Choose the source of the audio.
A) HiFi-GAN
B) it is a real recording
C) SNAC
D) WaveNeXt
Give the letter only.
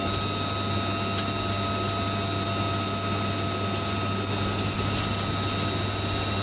B